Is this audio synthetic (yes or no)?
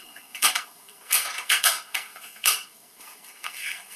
yes